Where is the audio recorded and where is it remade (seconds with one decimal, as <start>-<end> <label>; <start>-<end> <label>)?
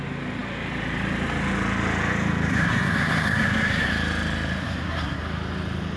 0.0-2.5 recorded; 2.5-3.9 remade; 3.9-4.6 recorded; 4.6-5.2 remade; 5.2-6.0 recorded